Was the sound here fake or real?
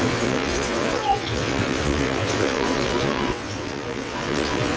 fake